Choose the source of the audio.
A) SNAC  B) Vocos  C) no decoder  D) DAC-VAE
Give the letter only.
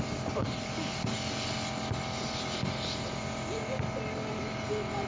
C